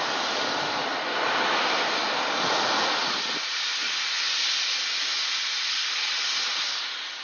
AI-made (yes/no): no